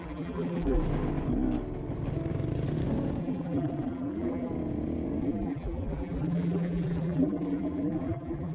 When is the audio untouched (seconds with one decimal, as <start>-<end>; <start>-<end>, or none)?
0.8-3.2; 4.5-5.2